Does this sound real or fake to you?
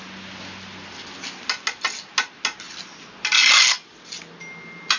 real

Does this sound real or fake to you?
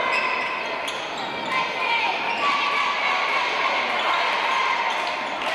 real